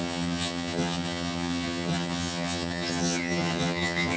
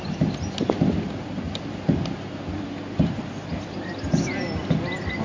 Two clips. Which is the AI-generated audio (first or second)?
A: first